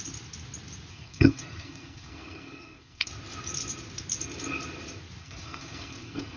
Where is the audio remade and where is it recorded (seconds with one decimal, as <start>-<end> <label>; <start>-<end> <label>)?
0.0-0.9 recorded; 0.9-3.1 remade; 3.1-5.2 recorded; 5.2-6.4 remade